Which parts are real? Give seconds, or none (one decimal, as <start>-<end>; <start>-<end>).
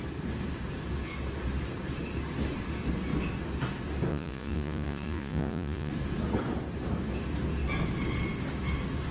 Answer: 0.0-4.1; 5.9-9.1